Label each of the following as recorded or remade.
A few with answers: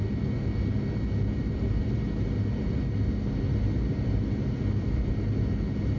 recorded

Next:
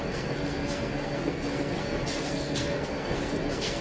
remade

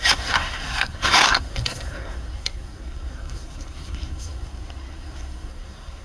remade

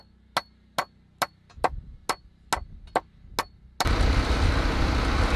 recorded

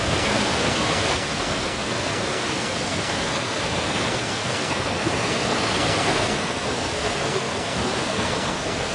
remade